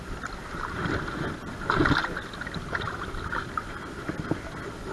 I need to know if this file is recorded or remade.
recorded